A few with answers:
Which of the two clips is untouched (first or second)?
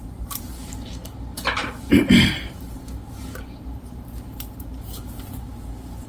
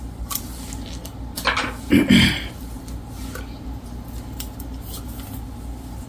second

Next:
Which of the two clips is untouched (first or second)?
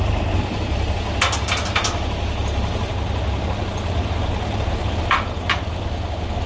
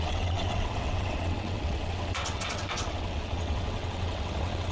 first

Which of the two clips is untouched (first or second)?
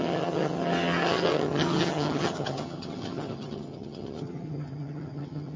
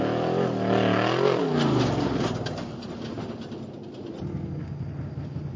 second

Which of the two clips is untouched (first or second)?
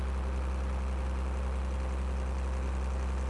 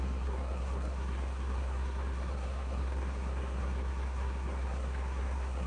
first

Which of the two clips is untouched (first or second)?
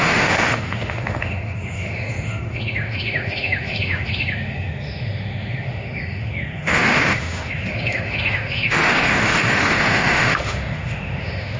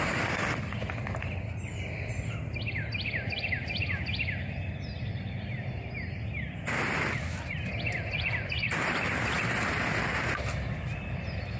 second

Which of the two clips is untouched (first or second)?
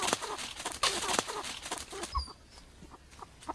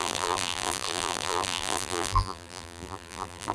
first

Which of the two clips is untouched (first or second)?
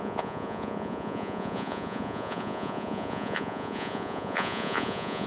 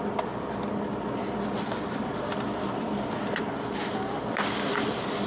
second